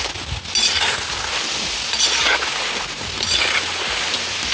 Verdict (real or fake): real